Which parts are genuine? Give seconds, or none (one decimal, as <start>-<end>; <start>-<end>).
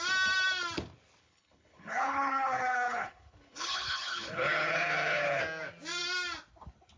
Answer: 0.0-1.2; 5.4-7.0